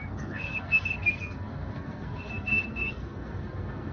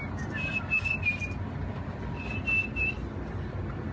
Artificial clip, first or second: first